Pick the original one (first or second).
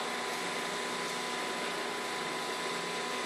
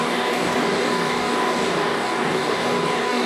first